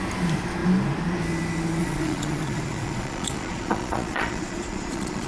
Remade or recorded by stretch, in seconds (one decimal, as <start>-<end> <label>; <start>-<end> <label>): 0.0-1.8 recorded; 1.8-5.3 remade